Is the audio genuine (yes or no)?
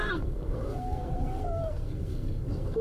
no